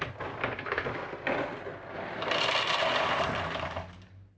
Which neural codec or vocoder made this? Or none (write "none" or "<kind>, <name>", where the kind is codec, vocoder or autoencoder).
none